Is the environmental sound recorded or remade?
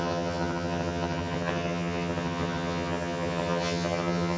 remade